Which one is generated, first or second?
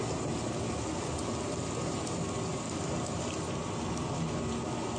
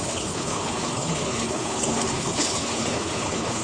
second